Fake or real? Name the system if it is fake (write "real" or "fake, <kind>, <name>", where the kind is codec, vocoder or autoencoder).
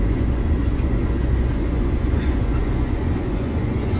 fake, vocoder, Vocos